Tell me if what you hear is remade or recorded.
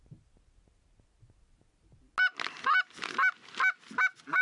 recorded